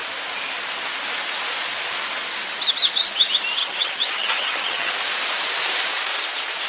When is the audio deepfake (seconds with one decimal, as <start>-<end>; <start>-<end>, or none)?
3.6-4.9